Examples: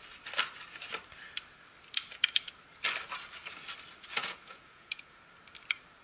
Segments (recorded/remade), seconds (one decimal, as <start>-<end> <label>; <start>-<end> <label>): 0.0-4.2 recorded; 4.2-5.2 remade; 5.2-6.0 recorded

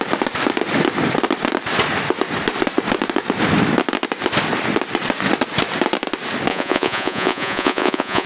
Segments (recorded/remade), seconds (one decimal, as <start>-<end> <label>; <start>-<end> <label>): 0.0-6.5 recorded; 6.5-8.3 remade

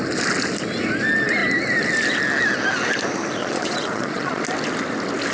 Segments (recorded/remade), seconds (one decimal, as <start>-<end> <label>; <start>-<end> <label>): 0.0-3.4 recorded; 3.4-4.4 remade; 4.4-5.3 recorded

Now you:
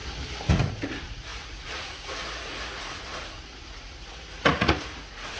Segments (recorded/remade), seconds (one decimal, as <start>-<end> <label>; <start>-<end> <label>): 0.0-0.5 recorded; 0.5-5.4 remade

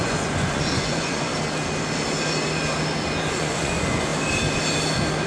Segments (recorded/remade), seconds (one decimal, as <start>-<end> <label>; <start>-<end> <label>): 0.0-1.3 remade; 1.3-3.2 recorded; 3.2-4.1 remade; 4.1-5.3 recorded

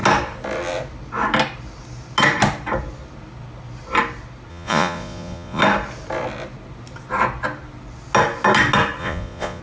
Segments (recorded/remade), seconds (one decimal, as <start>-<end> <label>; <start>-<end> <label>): 0.0-4.5 recorded; 4.5-5.6 remade; 5.6-9.0 recorded; 9.0-9.6 remade